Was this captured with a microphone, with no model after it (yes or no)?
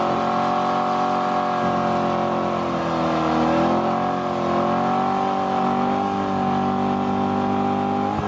yes